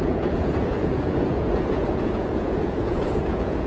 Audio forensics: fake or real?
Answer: fake